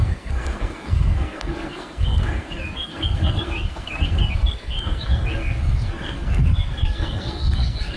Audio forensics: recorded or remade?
remade